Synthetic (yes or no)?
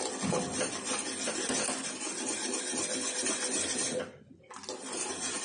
no